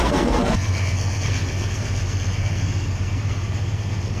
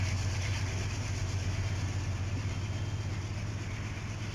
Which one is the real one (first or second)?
second